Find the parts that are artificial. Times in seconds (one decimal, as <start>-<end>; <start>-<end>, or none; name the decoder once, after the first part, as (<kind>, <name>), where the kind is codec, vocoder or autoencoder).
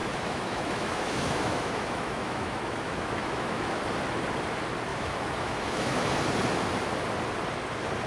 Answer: 0.0-3.8 (autoencoder, DAC-VAE); 4.9-6.1